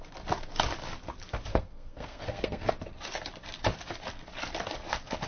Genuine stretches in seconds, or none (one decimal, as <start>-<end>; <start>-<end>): 0.0-1.5; 2.7-5.3